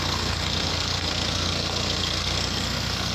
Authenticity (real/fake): fake